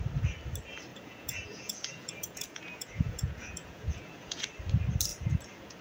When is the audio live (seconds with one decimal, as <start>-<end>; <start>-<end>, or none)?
0.0-0.9; 4.4-5.1